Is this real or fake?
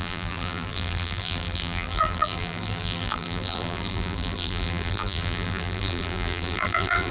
fake